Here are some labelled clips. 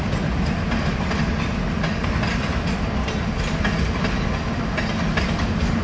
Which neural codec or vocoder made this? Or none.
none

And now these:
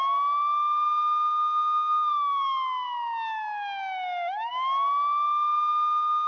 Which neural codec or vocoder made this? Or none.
none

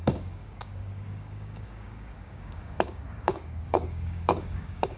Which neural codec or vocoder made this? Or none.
codec, DAC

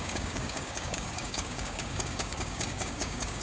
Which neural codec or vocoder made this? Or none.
codec, DAC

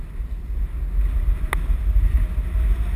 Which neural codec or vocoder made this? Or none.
none